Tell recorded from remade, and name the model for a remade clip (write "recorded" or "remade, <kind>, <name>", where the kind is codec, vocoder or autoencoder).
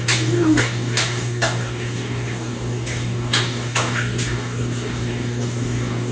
remade, codec, DAC